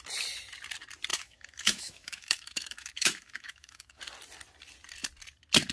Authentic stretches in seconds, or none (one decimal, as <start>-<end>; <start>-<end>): 0.0-1.1; 4.0-5.7